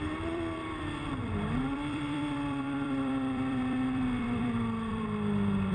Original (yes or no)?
no